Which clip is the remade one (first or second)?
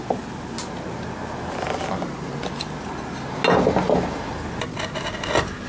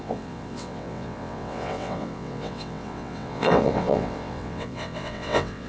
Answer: second